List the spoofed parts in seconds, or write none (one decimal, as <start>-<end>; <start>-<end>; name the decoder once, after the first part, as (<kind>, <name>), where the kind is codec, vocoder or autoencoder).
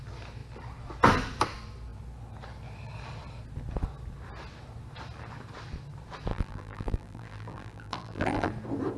6.3-8.5 (vocoder, BigVGAN v2)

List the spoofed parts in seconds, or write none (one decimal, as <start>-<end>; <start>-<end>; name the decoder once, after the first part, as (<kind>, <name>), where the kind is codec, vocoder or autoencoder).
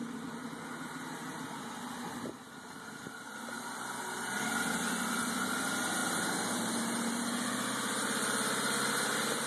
6.0-8.9 (vocoder, BigVGAN v2)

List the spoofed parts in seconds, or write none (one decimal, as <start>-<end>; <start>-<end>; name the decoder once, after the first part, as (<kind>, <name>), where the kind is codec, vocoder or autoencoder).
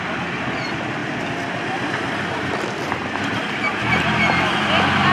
none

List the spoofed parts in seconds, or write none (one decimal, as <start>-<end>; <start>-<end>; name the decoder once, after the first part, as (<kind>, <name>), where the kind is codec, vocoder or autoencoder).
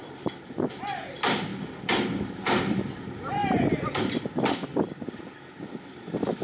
0.0-1.5 (vocoder, BigVGAN v2); 2.3-6.4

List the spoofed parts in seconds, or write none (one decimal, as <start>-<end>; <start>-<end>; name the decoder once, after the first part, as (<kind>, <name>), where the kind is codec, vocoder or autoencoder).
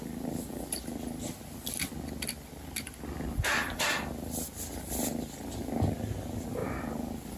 none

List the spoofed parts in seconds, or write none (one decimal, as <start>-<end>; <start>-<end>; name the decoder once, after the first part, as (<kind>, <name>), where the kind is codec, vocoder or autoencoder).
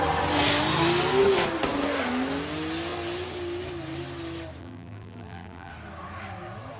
4.6-5.7 (vocoder, BigVGAN v2)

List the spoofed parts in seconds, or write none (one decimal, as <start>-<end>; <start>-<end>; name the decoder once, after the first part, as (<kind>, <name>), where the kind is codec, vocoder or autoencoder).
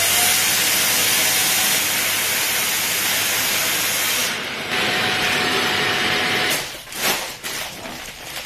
4.2-8.5 (vocoder, BigVGAN v2)